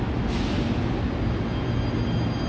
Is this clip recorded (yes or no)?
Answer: yes